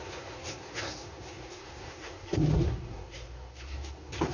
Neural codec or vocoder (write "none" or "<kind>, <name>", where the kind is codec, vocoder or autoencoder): codec, SNAC